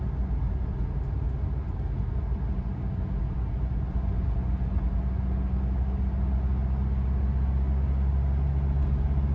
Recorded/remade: recorded